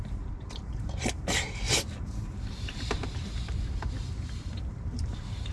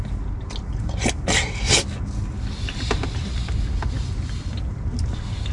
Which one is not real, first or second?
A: first